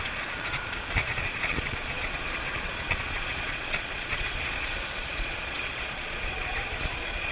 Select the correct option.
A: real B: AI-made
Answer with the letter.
B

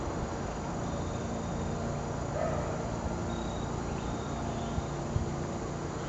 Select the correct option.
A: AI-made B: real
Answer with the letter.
B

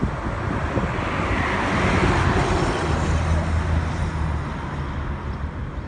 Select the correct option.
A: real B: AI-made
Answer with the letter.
A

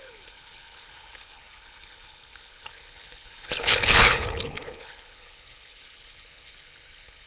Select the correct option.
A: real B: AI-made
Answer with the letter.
B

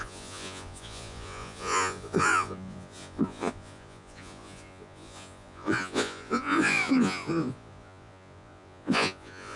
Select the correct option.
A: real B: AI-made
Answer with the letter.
B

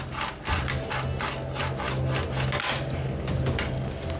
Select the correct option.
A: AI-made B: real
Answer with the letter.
B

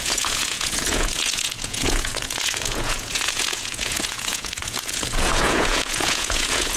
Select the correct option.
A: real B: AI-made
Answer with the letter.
B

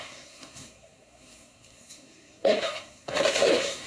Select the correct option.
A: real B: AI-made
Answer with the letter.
B